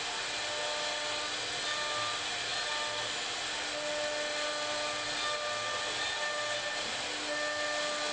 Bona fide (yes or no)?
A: yes